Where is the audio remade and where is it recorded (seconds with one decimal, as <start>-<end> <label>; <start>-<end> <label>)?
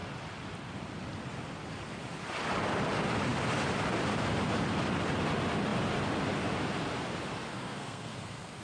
0.0-7.5 recorded; 7.5-8.6 remade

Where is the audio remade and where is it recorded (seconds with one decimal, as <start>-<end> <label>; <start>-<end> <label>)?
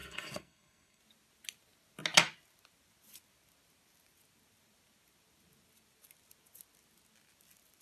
0.0-1.0 remade; 1.0-7.8 recorded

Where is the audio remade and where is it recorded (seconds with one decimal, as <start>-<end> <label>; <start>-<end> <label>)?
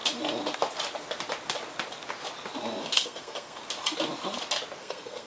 0.0-2.8 recorded; 2.8-3.6 remade; 3.6-4.8 recorded; 4.8-5.3 remade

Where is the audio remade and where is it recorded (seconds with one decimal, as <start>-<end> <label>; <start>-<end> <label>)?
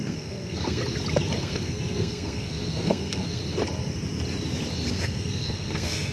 0.0-0.8 remade; 0.8-1.4 recorded; 1.4-3.4 remade; 3.4-4.9 recorded; 4.9-6.1 remade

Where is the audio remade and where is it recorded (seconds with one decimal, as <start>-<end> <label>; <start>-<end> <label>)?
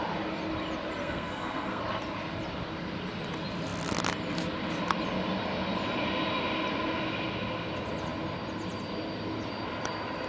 0.0-1.0 recorded; 1.0-1.8 remade; 1.8-10.3 recorded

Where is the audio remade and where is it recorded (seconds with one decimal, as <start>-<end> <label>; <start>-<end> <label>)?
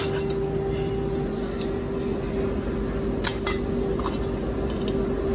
0.0-5.3 recorded